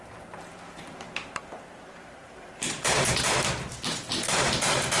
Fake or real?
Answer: fake